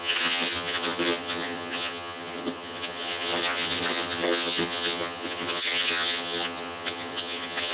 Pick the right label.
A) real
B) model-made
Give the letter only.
B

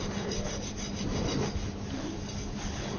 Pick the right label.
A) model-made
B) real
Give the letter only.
B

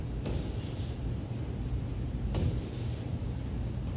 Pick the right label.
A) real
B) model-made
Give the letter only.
A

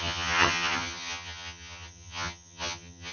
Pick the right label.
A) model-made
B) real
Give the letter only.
A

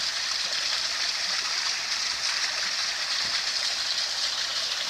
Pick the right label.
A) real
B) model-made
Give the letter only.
A